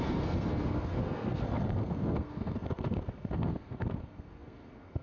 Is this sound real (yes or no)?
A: no